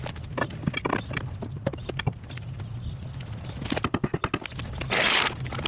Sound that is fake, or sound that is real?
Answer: real